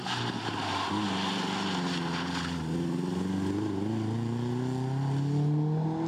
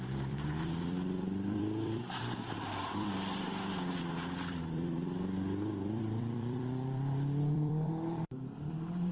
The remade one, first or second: second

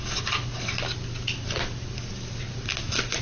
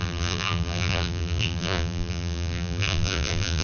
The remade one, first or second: second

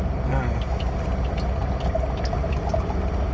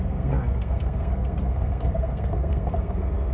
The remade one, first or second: second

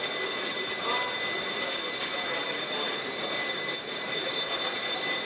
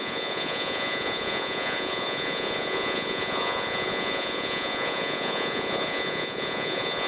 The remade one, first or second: second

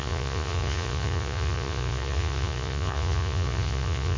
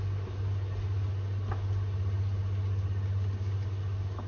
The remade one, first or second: first